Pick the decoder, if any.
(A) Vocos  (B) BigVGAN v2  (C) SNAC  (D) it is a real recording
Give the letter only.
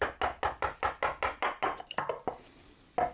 D